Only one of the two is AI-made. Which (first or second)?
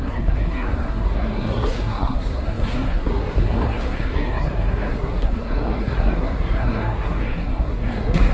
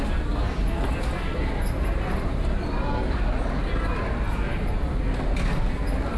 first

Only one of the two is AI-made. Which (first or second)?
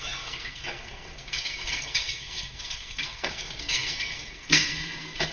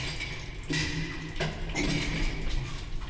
first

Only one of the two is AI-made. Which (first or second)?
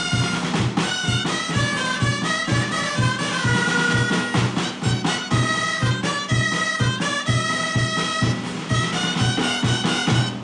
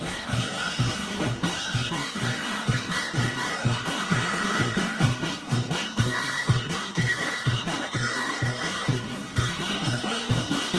second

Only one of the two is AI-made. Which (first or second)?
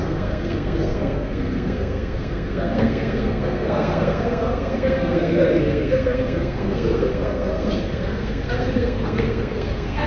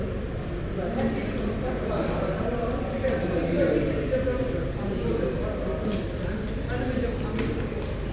first